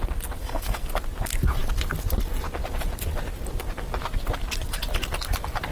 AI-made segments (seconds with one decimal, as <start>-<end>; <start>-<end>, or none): 0.4-0.9